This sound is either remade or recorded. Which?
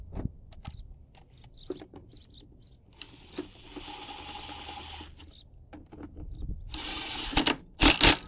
recorded